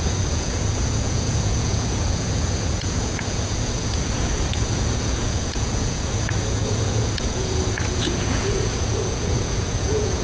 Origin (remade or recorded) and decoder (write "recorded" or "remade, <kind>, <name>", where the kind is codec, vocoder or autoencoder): remade, vocoder, Vocos